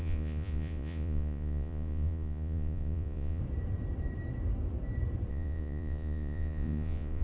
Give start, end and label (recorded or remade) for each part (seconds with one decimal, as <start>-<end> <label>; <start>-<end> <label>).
0.0-3.4 remade; 3.4-5.3 recorded; 5.3-7.2 remade